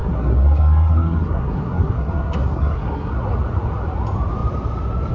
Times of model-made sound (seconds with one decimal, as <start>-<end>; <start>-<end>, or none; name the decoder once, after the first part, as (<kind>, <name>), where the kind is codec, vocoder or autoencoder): 0.0-3.1 (codec, SNAC)